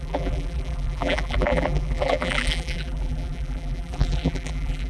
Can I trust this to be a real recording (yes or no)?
no